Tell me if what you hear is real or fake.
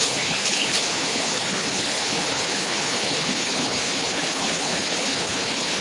fake